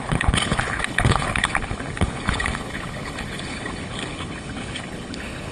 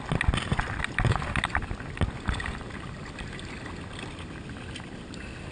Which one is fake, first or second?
first